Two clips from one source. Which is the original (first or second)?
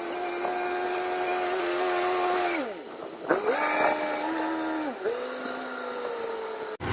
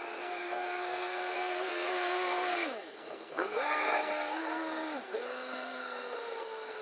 first